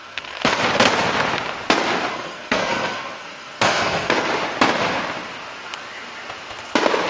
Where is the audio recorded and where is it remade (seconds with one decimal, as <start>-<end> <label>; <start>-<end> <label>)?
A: 0.0-0.6 remade; 0.6-2.1 recorded; 2.1-4.3 remade; 4.3-7.1 recorded